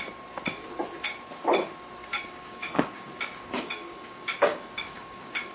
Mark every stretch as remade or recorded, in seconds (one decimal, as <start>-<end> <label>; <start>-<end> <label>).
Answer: 0.0-2.0 recorded; 2.0-5.5 remade